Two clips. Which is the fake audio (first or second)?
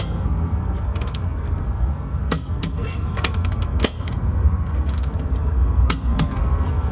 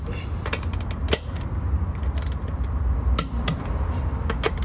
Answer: first